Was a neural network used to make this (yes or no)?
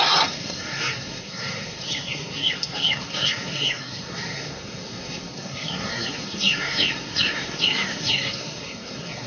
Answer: yes